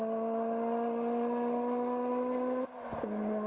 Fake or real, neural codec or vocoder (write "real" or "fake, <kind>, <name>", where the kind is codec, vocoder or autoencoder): real